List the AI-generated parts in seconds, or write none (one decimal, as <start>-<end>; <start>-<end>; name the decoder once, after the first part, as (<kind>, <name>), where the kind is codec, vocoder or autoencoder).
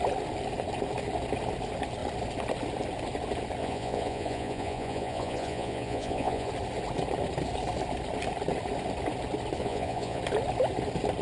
3.6-6.5 (vocoder, Vocos); 9.6-10.2